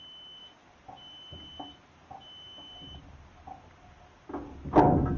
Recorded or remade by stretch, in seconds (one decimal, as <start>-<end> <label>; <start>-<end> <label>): 0.0-5.2 recorded